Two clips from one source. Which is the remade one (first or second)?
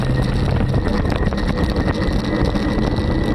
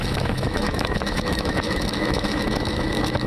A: second